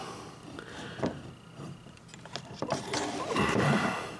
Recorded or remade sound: recorded